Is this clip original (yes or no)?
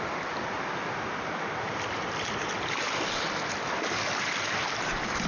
yes